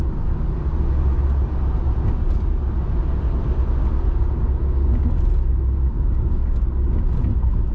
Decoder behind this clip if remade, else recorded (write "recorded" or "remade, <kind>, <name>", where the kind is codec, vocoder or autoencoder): recorded